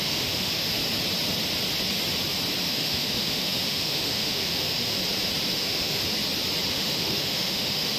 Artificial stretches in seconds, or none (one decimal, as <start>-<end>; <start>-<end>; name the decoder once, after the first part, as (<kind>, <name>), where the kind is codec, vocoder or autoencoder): 0.0-0.8 (autoencoder, DAC-VAE); 2.6-5.0; 5.5-6.0; 6.7-8.0